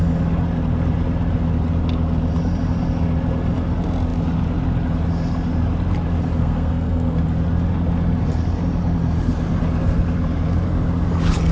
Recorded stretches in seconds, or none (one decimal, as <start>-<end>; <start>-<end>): 0.0-6.4; 7.2-11.5